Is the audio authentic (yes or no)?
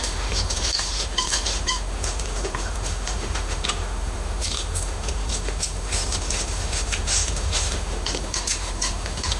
no